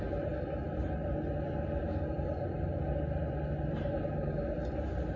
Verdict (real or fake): real